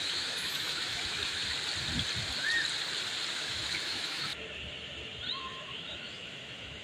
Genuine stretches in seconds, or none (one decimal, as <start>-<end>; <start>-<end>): 1.4-3.3; 4.3-5.3